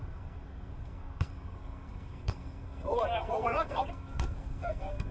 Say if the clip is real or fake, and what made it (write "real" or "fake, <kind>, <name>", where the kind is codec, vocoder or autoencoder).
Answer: fake, codec, SNAC